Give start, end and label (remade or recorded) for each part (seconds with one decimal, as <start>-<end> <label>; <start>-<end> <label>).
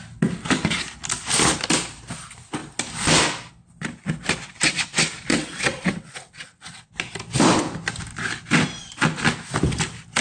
0.0-5.3 recorded; 5.3-6.9 remade; 6.9-10.2 recorded